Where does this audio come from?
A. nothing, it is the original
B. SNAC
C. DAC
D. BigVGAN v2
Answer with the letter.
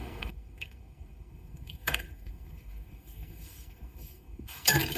B